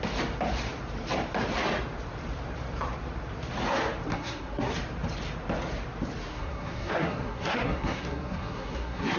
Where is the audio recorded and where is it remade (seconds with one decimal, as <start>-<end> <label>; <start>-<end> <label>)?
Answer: 0.0-4.1 recorded; 4.1-4.7 remade; 4.7-6.3 recorded; 6.3-9.2 remade